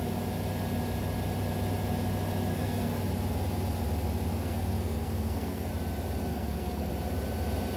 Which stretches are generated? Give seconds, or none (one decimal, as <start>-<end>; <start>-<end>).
2.5-3.0; 4.3-5.7; 6.3-6.9